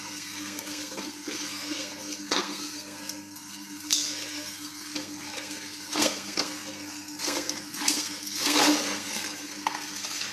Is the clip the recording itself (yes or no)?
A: no